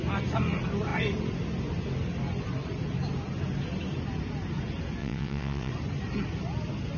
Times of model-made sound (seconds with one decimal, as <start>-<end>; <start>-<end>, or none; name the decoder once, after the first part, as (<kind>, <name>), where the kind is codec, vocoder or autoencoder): 5.0-5.7 (vocoder, WaveNeXt)